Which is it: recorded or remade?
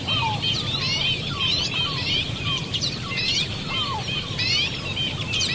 remade